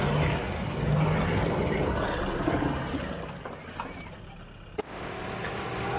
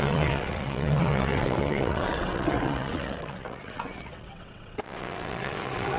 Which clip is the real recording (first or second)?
first